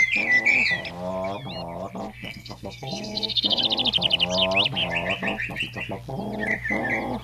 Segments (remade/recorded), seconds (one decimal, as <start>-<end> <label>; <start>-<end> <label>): 0.0-2.1 recorded; 2.1-3.6 remade; 3.6-7.2 recorded